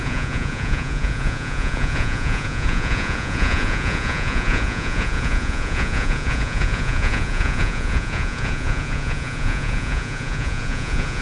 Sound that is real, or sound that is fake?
fake